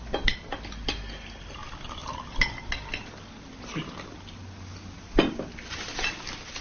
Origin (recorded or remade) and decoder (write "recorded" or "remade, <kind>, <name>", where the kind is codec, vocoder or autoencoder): recorded